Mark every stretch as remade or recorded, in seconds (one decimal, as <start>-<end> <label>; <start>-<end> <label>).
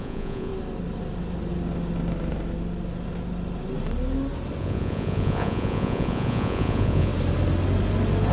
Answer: 0.0-0.5 remade; 0.5-4.6 recorded; 4.6-7.1 remade; 7.1-8.3 recorded